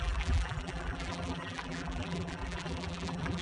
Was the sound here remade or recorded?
remade